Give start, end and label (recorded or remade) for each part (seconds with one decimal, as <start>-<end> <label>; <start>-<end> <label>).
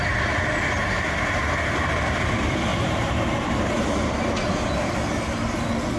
0.0-2.7 recorded; 2.7-3.8 remade; 3.8-6.0 recorded